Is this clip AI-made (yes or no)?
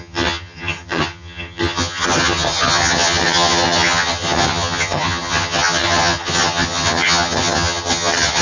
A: yes